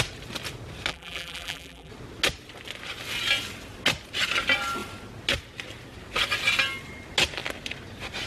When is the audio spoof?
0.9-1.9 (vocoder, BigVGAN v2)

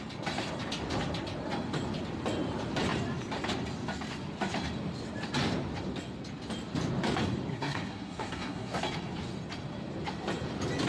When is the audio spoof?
7.5-8.8 (codec, SNAC)